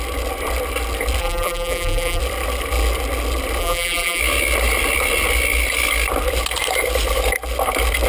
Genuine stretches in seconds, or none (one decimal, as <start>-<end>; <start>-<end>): 0.0-1.2; 2.2-3.6; 4.2-8.1